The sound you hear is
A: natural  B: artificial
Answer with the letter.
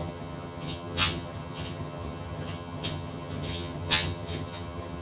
B